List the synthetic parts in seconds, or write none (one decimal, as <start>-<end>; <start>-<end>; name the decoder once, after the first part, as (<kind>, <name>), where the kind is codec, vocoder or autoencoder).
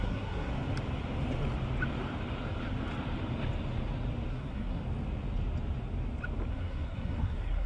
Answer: 0.0-0.5 (codec, SNAC); 4.3-4.8; 6.5-7.7